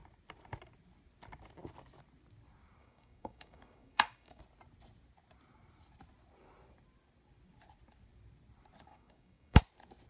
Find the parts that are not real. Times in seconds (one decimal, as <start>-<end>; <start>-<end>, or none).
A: 2.8-4.4; 8.9-9.6

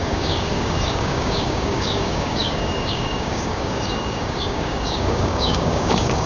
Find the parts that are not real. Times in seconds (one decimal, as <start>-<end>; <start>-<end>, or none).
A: 0.0-6.3

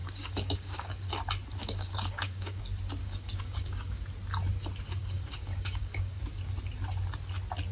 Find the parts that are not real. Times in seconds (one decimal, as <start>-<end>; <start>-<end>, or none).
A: 0.0-1.1; 1.6-2.6; 3.0-4.0; 5.0-6.2

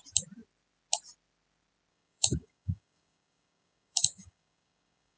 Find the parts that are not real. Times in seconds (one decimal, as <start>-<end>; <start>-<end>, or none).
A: 1.9-5.2

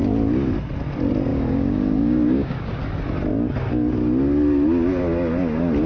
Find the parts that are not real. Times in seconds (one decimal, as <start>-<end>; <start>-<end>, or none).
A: 1.3-2.7